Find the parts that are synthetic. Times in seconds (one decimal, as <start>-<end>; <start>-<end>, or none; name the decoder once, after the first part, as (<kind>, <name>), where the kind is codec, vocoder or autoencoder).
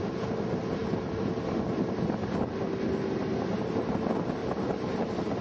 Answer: 4.4-5.4 (vocoder, BigVGAN v2)